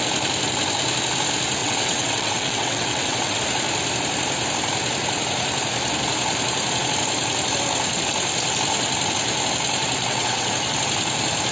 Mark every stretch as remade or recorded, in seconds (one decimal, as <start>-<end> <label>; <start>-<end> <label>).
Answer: 0.0-1.6 recorded; 1.6-3.4 remade; 3.4-10.0 recorded; 10.0-10.5 remade; 10.5-11.5 recorded